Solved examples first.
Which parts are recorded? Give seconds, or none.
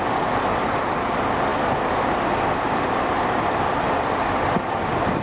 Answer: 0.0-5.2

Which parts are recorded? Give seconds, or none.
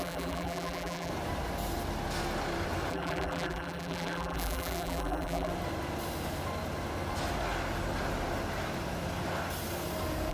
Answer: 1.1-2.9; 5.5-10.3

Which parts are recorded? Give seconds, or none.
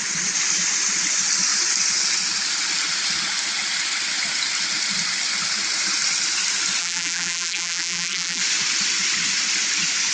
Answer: 0.0-6.8; 8.4-10.1